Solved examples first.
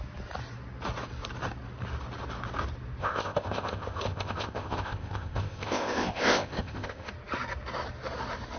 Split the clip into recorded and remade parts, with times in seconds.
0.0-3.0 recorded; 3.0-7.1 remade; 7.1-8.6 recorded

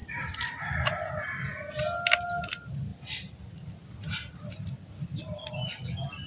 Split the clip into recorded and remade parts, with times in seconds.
0.0-0.9 remade; 0.9-2.9 recorded; 2.9-5.2 remade; 5.2-6.3 recorded

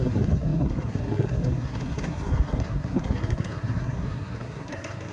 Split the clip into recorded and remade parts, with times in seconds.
0.0-5.1 remade

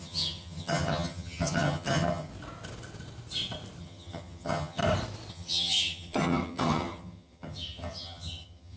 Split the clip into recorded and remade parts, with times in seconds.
0.0-2.3 remade; 2.3-3.8 recorded; 3.8-4.8 remade; 4.8-5.3 recorded; 5.3-8.8 remade

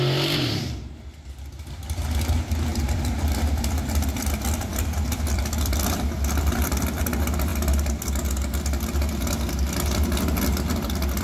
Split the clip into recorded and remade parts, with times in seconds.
0.0-2.7 recorded; 2.7-7.0 remade; 7.0-11.2 recorded

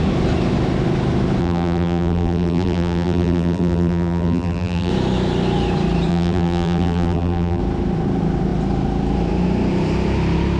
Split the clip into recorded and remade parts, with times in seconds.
0.0-1.4 recorded; 1.4-4.9 remade; 4.9-6.1 recorded; 6.1-7.6 remade; 7.6-10.6 recorded

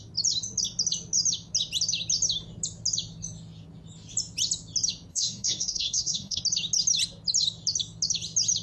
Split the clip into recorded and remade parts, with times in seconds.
0.0-5.1 recorded; 5.1-6.4 remade; 6.4-8.6 recorded